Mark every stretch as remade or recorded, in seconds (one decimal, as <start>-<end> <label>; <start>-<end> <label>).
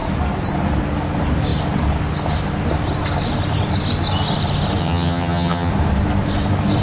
0.0-4.8 recorded; 4.8-5.7 remade; 5.7-6.8 recorded